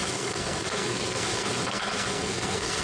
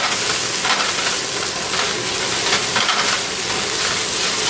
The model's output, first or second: first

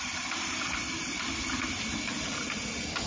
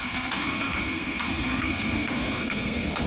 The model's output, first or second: second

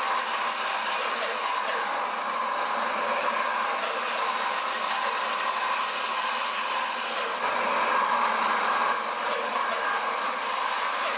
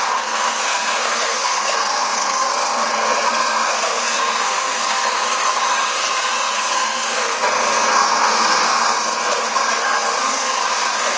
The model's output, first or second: second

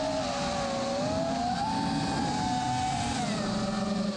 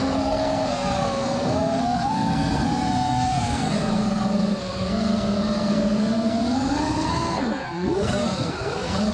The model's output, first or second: second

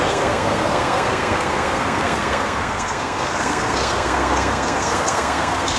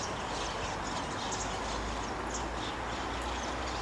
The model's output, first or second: first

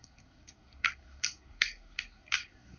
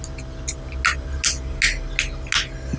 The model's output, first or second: first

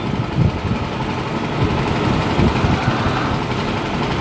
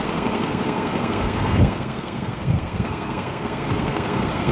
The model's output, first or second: second